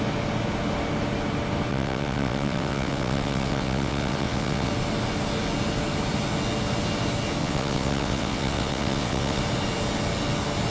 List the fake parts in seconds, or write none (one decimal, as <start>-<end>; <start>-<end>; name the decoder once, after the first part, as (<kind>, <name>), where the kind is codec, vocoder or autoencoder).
1.7-4.7 (vocoder, WaveNeXt); 7.4-9.4

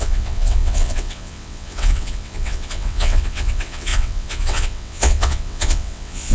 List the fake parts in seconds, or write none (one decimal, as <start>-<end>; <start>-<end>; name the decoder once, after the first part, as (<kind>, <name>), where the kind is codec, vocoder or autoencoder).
0.0-6.3 (vocoder, WaveNeXt)

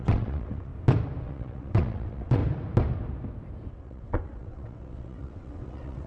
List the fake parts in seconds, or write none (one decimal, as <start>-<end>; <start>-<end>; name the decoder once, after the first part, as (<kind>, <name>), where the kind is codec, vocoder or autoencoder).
0.0-0.7 (vocoder, WaveNeXt); 1.2-2.4; 3.7-6.1